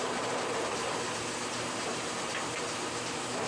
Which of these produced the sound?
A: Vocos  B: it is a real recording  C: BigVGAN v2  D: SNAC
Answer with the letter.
C